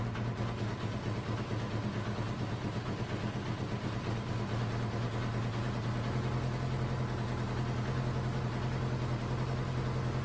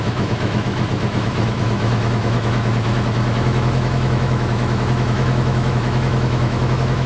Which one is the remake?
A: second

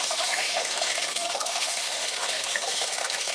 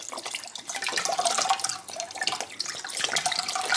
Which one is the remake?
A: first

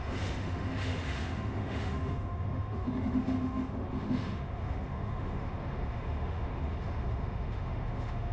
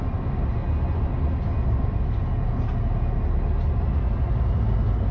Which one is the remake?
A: first